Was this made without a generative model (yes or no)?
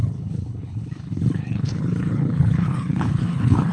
no